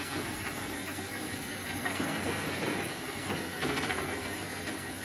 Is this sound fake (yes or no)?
yes